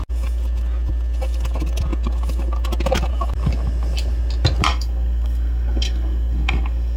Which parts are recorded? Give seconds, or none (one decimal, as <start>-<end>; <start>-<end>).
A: 0.0-4.7